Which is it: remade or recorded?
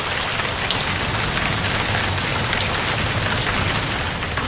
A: recorded